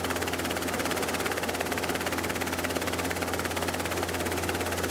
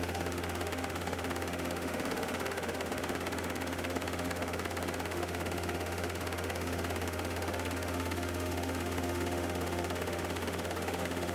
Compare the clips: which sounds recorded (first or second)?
first